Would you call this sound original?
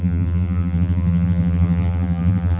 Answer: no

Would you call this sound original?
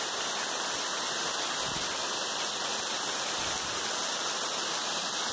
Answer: yes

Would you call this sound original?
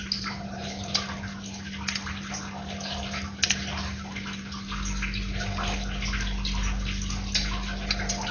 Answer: yes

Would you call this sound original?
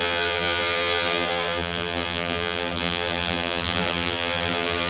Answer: no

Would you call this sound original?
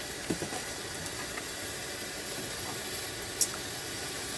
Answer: yes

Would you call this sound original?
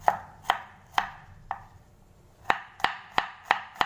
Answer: no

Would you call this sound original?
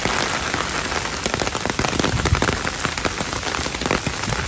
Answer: yes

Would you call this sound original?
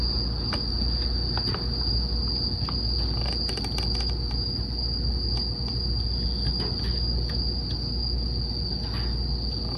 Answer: yes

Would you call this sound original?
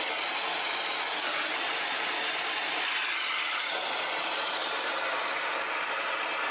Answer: no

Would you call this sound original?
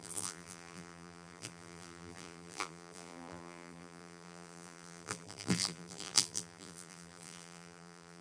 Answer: no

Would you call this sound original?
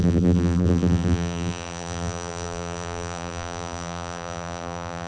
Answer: no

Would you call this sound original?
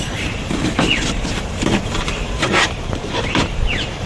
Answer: no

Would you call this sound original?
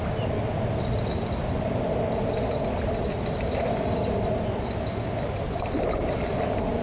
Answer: yes